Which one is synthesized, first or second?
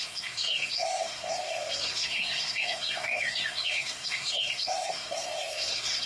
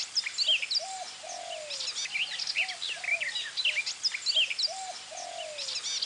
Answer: first